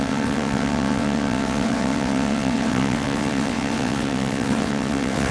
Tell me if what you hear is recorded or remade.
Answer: remade